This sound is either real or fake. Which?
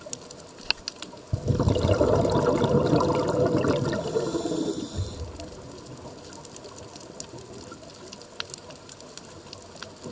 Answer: real